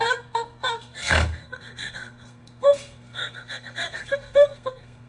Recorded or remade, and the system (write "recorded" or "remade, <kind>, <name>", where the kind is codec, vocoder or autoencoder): remade, codec, SNAC